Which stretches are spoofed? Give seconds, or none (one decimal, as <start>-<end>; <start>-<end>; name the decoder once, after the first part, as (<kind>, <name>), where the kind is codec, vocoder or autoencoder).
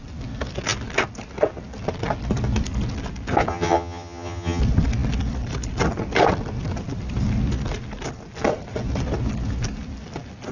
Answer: 3.5-4.6 (vocoder, HiFi-GAN)